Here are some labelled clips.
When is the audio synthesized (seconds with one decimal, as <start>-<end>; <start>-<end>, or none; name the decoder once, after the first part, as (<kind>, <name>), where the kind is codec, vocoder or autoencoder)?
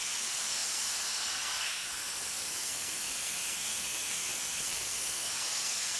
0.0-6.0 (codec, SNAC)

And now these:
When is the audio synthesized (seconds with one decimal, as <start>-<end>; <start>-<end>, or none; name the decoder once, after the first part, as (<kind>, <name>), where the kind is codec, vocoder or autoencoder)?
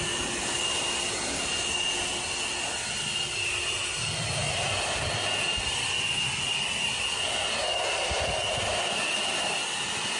none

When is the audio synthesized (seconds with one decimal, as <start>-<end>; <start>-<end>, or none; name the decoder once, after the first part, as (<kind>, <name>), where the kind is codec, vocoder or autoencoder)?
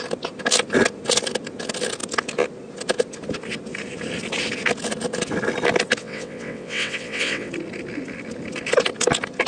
6.0-7.5 (vocoder, WaveNeXt)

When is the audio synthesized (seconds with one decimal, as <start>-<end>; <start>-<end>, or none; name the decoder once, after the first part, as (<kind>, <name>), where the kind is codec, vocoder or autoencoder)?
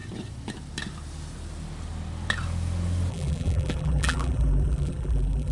3.1-5.5 (vocoder, BigVGAN v2)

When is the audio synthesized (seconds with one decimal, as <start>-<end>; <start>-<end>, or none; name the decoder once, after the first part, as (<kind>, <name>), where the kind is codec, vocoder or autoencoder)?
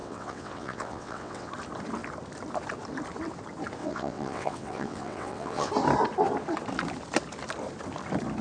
0.0-1.5 (vocoder, WaveNeXt); 3.8-5.7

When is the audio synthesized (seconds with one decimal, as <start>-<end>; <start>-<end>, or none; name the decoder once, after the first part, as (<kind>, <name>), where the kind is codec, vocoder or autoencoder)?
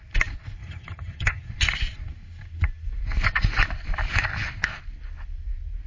0.6-1.5 (vocoder, HiFi-GAN)